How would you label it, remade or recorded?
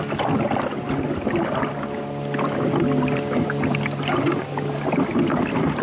recorded